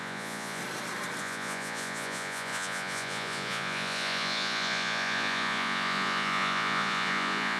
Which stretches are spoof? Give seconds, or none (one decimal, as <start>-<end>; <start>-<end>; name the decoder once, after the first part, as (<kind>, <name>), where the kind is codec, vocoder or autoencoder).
0.0-0.6 (vocoder, Vocos); 1.2-7.6